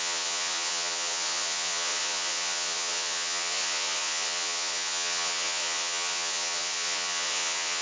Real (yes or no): no